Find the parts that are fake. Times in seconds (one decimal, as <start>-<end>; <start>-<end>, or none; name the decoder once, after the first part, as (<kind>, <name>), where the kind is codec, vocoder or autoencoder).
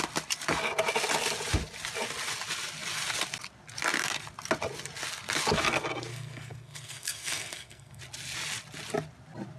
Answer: 6.1-8.0 (codec, SNAC)